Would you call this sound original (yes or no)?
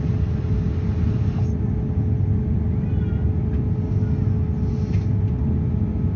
yes